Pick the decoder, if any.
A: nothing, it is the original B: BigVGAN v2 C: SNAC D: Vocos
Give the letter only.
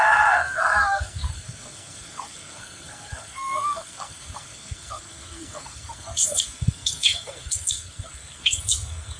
C